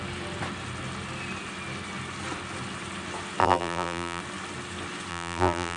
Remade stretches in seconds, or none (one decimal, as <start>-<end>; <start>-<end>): 3.4-4.2; 5.1-5.8